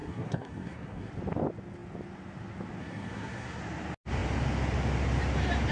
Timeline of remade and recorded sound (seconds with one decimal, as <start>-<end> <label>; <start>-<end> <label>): 0.0-1.1 remade; 1.1-2.8 recorded; 2.8-3.6 remade; 3.6-5.7 recorded